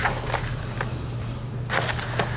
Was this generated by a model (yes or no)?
no